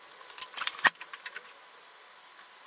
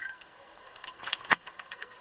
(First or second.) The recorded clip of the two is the first